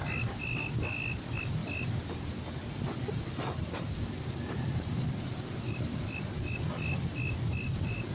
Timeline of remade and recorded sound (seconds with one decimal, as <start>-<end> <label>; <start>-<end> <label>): 0.0-1.6 remade; 1.6-3.1 recorded; 3.1-8.1 remade